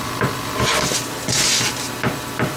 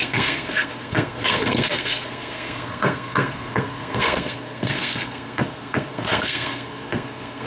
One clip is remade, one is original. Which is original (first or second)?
first